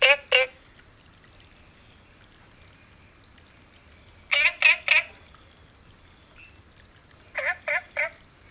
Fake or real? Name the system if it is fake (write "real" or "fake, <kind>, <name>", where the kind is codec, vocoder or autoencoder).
real